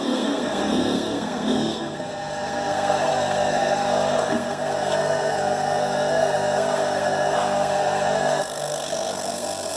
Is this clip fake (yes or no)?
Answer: yes